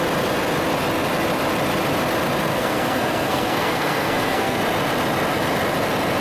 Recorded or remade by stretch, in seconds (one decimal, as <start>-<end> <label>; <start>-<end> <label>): 0.0-2.5 recorded; 2.5-4.6 remade; 4.6-6.2 recorded